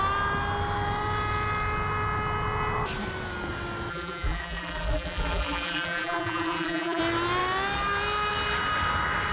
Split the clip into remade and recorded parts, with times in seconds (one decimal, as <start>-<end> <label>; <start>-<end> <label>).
0.0-3.9 recorded; 3.9-7.0 remade; 7.0-9.3 recorded